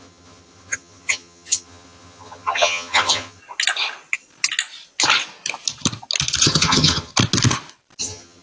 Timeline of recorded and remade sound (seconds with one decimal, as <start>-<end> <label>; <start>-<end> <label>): 0.0-3.4 remade; 3.4-6.4 recorded; 6.4-7.1 remade; 7.1-8.0 recorded; 8.0-8.4 remade